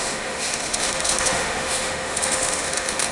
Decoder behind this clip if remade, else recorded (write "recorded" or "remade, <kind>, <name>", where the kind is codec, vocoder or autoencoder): remade, autoencoder, DAC-VAE